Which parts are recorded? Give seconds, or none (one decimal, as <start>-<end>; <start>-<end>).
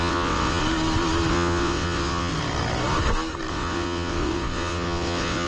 0.6-1.3; 2.3-3.5